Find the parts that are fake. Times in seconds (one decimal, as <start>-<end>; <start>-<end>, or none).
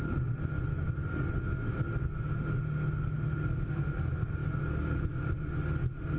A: none